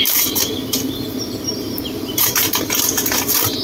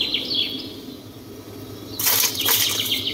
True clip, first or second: second